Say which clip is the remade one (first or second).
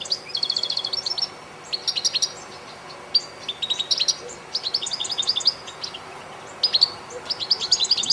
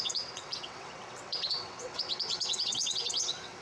second